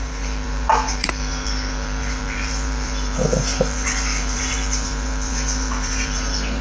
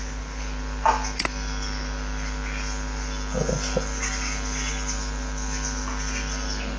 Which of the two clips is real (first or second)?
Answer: second